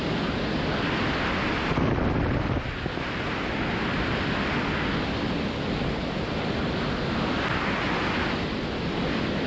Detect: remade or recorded recorded